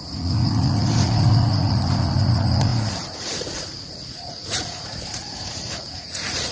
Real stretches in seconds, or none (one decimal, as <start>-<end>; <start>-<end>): none